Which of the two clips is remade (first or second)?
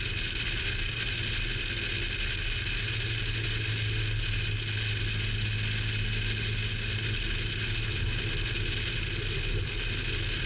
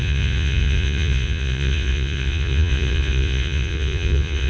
second